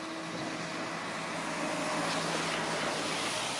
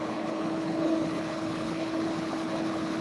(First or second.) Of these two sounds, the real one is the first